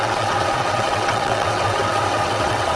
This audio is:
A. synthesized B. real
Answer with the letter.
A